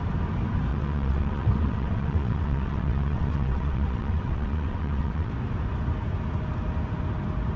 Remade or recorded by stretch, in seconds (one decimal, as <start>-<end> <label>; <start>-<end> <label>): 0.0-0.7 recorded; 0.7-5.3 remade; 5.3-7.6 recorded